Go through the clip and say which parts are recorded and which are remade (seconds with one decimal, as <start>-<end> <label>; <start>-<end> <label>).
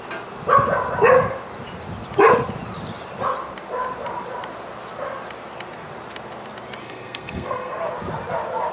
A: 0.0-6.8 recorded; 6.8-7.8 remade; 7.8-8.7 recorded